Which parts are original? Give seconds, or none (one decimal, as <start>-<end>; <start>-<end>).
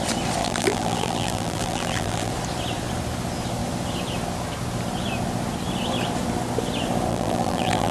0.0-0.4; 2.3-7.1